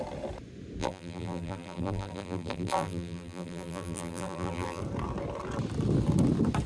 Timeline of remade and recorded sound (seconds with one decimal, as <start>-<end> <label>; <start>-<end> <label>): 0.0-0.8 recorded; 0.8-4.8 remade; 4.8-6.7 recorded